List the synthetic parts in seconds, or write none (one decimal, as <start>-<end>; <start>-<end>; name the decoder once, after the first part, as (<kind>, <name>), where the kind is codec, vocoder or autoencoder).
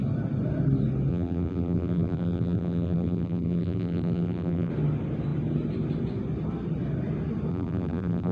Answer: 1.1-4.7 (vocoder, BigVGAN v2); 7.5-8.3